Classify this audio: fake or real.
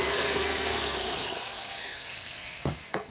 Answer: fake